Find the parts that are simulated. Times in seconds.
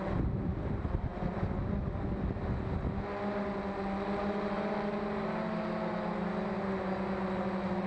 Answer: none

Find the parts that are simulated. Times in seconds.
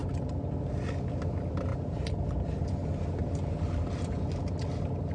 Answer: none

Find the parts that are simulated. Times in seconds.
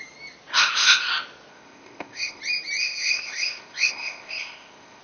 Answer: 0.5-1.1 (codec, ZipCodec); 1.5-2.4; 2.8-5.0